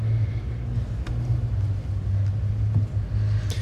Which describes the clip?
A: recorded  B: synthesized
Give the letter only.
A